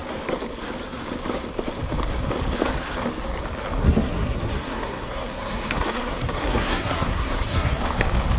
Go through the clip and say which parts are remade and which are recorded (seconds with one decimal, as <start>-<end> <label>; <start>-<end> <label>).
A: 0.0-3.8 recorded; 3.8-7.8 remade; 7.8-8.4 recorded